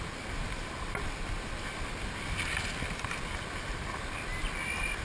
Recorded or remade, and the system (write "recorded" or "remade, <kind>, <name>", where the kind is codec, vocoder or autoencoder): recorded